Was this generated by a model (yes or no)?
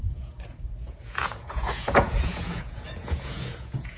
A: yes